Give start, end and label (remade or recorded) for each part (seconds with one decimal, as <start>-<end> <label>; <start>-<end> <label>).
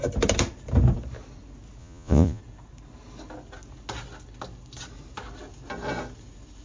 0.0-1.8 recorded; 1.8-2.4 remade; 2.4-6.6 recorded